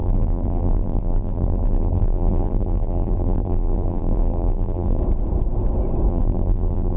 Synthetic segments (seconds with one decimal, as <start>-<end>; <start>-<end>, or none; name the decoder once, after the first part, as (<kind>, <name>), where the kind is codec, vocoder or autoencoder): 0.0-5.0 (vocoder, BigVGAN v2); 6.1-7.0